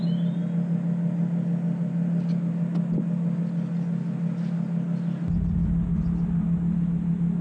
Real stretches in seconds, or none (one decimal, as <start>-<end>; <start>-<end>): 0.0-7.4